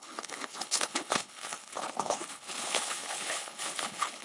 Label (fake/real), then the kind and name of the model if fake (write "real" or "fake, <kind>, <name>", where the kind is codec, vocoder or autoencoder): fake, codec, HILCodec